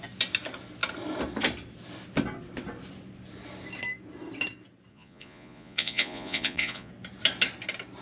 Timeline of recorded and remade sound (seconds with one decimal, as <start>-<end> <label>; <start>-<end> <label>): 0.0-4.9 recorded; 4.9-6.9 remade; 6.9-8.0 recorded